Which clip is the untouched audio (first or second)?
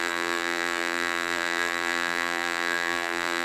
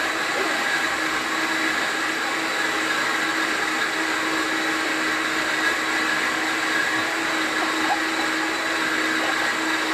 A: second